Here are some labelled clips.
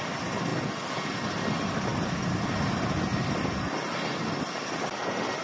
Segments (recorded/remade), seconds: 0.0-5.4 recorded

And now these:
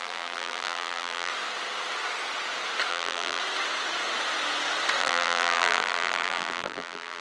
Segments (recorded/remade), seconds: 0.0-1.3 remade; 1.3-2.9 recorded; 2.9-3.4 remade; 3.4-5.0 recorded; 5.0-7.2 remade

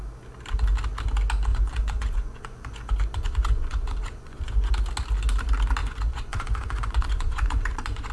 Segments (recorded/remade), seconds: 0.0-1.5 recorded; 1.5-4.7 remade; 4.7-5.8 recorded; 5.8-8.1 remade

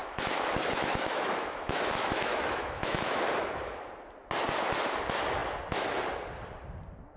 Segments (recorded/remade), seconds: 0.0-3.3 remade; 3.3-7.2 recorded

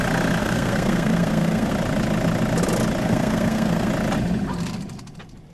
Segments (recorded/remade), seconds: 0.0-0.4 recorded; 0.4-1.7 remade; 1.7-3.0 recorded; 3.0-3.9 remade; 3.9-5.5 recorded

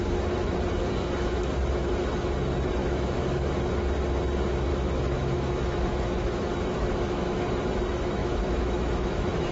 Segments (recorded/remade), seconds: 0.0-2.8 recorded; 2.8-3.5 remade; 3.5-4.7 recorded; 4.7-7.4 remade; 7.4-8.2 recorded; 8.2-9.5 remade